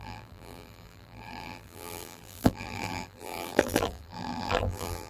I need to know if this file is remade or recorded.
remade